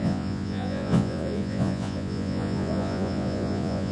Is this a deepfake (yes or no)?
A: yes